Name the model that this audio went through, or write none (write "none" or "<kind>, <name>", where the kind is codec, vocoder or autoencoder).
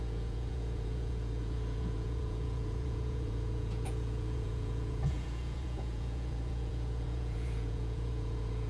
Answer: vocoder, Vocos